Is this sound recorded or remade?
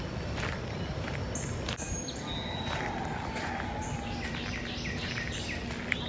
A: recorded